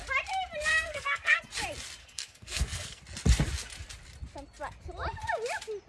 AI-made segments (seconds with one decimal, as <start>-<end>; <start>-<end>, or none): 0.7-1.4; 2.0-3.0

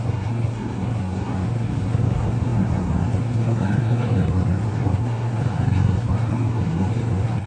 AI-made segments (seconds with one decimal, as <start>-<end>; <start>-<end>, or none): 0.0-7.5

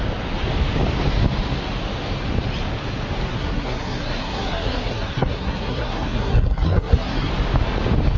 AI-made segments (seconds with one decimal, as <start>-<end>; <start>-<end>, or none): 3.3-7.3

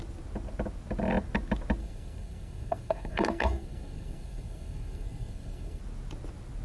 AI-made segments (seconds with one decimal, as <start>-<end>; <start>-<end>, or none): 1.8-5.8

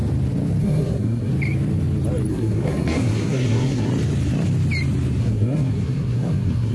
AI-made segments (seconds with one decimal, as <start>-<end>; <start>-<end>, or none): 0.6-1.3; 2.3-3.9; 5.2-6.7

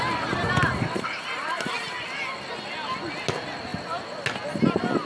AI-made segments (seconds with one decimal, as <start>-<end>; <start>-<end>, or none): none